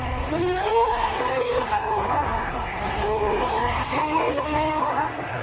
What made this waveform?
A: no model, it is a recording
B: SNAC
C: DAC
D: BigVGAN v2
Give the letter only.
B